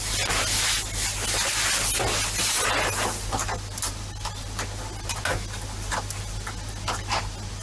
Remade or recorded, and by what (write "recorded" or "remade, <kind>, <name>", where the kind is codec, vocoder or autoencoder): recorded